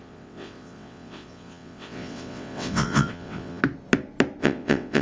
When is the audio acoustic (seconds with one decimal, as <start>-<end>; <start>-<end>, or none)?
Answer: 3.6-4.4